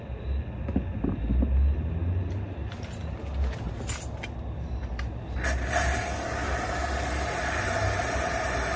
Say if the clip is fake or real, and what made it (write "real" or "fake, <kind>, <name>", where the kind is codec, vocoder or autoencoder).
real